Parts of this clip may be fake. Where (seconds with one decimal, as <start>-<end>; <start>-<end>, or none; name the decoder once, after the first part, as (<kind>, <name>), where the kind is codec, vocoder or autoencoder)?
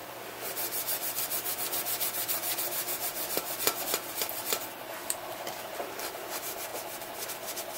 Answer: 0.0-3.8 (vocoder, BigVGAN v2)